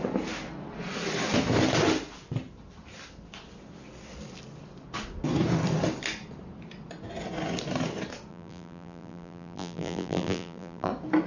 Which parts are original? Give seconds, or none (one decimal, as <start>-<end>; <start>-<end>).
0.0-8.3; 10.9-11.3